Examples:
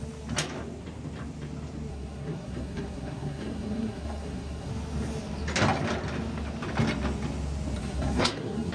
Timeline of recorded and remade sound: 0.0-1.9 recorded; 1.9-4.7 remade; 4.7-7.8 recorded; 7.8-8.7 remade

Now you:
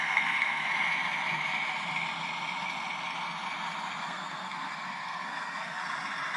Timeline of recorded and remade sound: 0.0-0.7 remade; 0.7-4.0 recorded; 4.0-5.8 remade; 5.8-6.4 recorded

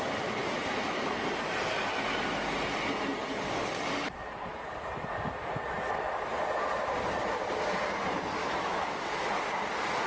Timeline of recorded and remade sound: 0.0-8.4 recorded; 8.4-9.4 remade; 9.4-10.1 recorded

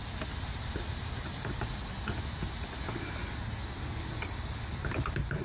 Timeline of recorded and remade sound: 0.0-5.4 recorded

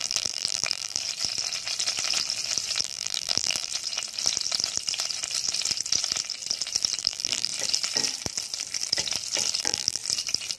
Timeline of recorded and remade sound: 0.0-1.0 remade; 1.0-2.8 recorded; 2.8-3.7 remade; 3.7-7.0 recorded; 7.0-7.5 remade; 7.5-9.6 recorded; 9.6-10.0 remade; 10.0-10.6 recorded

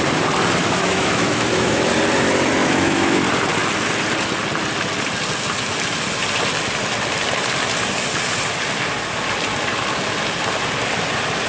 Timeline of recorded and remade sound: 0.0-0.6 recorded; 0.6-1.9 remade; 1.9-2.6 recorded; 2.6-3.2 remade; 3.2-11.5 recorded